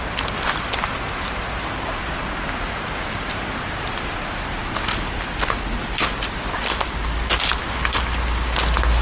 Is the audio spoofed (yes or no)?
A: no